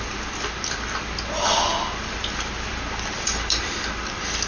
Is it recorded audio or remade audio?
recorded